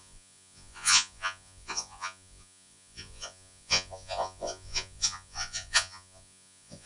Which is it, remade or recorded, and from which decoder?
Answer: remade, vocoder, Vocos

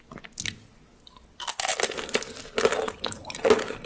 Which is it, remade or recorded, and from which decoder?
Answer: recorded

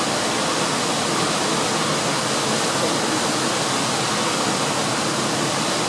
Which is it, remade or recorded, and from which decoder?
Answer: recorded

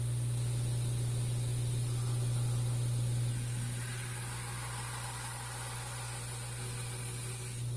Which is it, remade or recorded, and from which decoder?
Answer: recorded